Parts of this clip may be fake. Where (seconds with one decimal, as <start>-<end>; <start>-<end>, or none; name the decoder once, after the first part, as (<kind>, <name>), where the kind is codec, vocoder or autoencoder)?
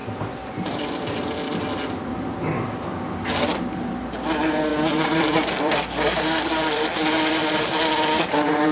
0.0-1.3 (vocoder, BigVGAN v2); 4.7-5.7